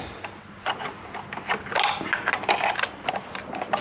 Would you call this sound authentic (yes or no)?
yes